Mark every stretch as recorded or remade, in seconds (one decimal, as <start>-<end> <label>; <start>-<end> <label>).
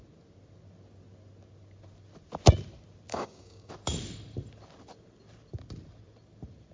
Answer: 0.0-3.1 recorded; 3.1-3.7 remade; 3.7-6.7 recorded